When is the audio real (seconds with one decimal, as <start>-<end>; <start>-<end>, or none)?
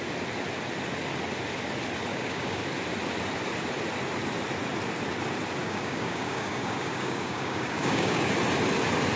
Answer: 0.0-2.1; 2.6-5.6; 8.3-9.2